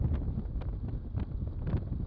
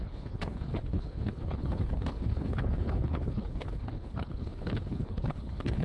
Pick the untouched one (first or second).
first